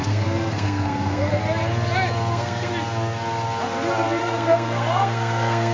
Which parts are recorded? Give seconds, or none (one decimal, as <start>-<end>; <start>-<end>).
1.4-2.3; 2.7-4.2